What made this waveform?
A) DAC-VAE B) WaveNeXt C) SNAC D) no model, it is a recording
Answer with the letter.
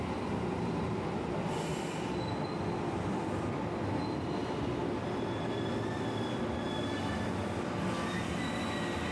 D